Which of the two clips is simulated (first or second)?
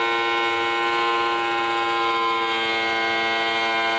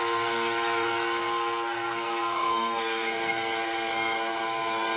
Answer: second